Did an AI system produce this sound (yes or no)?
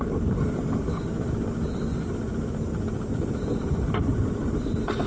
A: no